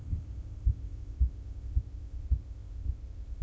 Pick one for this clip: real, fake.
fake